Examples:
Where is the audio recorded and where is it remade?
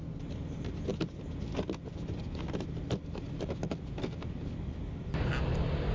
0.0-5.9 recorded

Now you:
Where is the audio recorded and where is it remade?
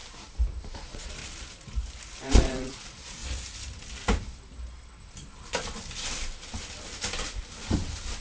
0.0-0.6 recorded; 0.6-1.2 remade; 1.2-2.3 recorded; 2.3-3.2 remade; 3.2-8.2 recorded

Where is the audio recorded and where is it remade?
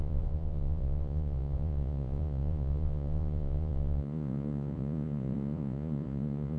0.0-6.6 remade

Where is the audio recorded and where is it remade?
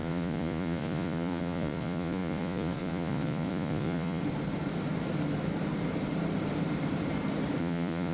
0.0-4.2 remade; 4.2-7.6 recorded; 7.6-8.1 remade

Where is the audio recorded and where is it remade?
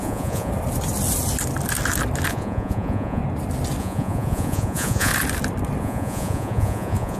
0.0-0.5 remade; 0.5-2.3 recorded; 2.3-3.2 remade; 3.2-3.8 recorded; 3.8-5.1 remade; 5.1-5.8 recorded; 5.8-7.2 remade